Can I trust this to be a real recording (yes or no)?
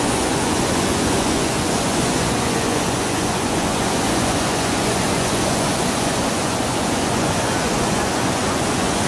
no